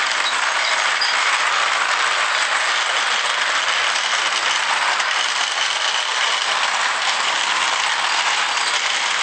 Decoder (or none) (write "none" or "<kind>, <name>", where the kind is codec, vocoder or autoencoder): none